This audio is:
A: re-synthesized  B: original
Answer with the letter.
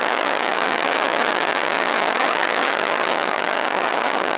A